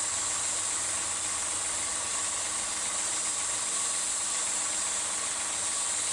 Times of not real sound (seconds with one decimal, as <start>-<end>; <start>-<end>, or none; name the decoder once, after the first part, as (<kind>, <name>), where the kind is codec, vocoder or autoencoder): none

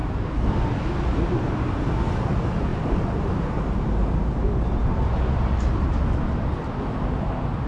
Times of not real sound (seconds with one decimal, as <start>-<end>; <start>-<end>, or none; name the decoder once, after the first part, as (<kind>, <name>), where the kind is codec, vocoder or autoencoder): 0.0-1.7 (vocoder, BigVGAN v2); 2.7-5.9

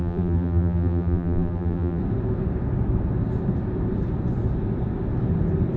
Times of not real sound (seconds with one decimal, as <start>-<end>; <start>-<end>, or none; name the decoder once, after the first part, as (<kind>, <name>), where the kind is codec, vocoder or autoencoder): 0.0-2.0 (vocoder, BigVGAN v2)

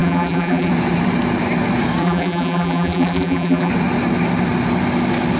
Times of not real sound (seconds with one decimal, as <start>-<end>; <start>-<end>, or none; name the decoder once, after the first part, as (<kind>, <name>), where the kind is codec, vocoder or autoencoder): 0.0-0.7 (vocoder, BigVGAN v2); 2.0-3.7

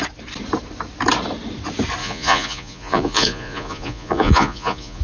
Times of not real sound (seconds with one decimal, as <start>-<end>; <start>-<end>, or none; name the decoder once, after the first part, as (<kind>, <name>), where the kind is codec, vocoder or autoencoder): 2.0-5.0 (vocoder, Vocos)

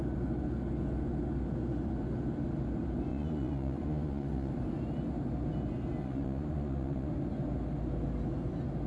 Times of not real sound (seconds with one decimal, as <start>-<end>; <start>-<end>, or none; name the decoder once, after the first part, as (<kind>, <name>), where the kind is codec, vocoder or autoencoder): 3.1-4.5 (vocoder, Vocos); 6.0-7.1

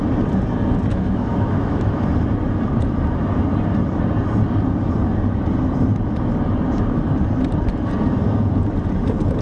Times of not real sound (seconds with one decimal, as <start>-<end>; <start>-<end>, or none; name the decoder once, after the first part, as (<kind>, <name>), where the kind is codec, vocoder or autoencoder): 0.9-2.0 (autoencoder, DAC-VAE)

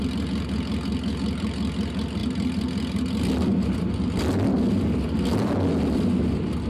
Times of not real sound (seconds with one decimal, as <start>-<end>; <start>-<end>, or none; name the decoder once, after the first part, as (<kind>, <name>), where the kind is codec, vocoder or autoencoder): none